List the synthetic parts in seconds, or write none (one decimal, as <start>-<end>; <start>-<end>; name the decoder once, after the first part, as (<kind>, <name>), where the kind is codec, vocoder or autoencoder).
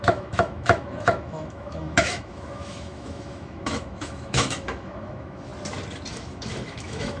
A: 0.0-5.5 (autoencoder, DAC-VAE); 6.1-7.2